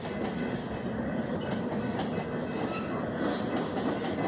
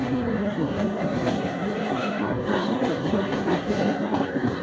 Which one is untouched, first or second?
first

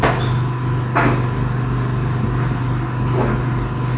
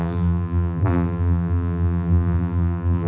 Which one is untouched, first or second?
first